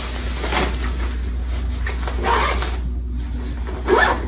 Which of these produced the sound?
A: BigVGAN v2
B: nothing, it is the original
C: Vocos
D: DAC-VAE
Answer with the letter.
B